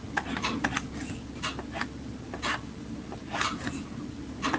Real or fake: real